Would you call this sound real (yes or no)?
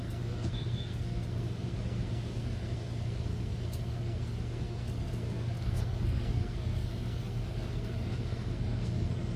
no